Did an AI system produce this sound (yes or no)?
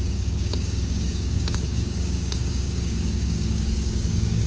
yes